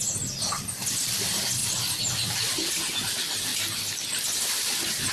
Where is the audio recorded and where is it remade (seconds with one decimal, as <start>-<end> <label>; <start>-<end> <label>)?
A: 0.0-5.1 recorded